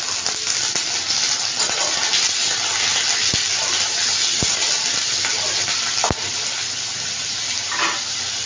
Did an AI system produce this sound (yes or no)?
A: no